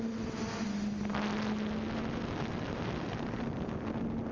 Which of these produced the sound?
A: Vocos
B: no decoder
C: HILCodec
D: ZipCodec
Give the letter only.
B